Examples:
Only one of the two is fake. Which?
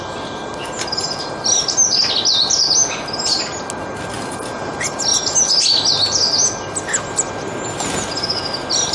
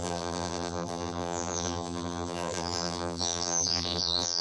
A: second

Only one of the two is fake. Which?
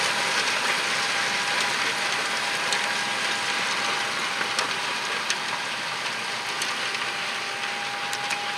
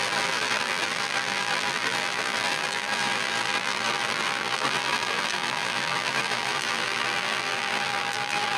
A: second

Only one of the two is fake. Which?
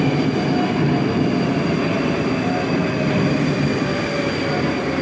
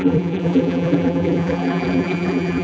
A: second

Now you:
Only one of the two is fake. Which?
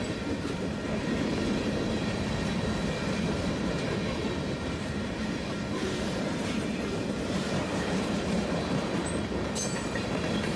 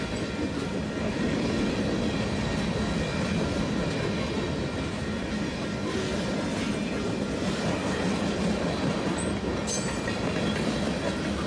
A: first